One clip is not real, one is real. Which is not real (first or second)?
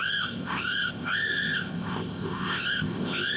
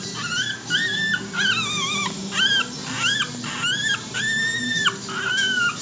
first